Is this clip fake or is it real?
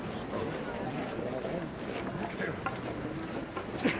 real